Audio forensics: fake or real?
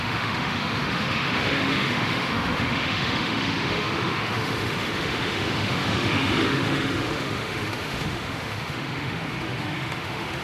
fake